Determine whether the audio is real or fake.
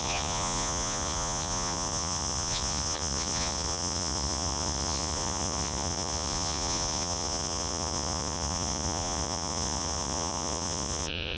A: fake